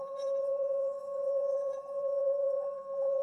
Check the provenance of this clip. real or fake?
fake